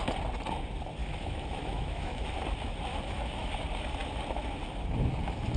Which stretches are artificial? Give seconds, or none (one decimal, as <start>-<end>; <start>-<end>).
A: 1.0-2.2; 2.9-3.5